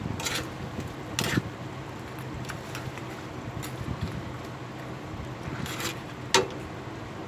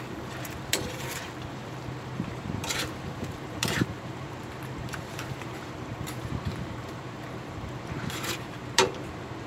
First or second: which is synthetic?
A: second